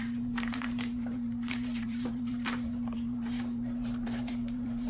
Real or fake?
fake